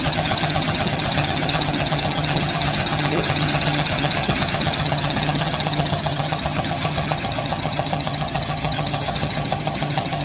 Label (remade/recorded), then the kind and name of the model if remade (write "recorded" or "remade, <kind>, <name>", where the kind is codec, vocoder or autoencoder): remade, vocoder, HiFi-GAN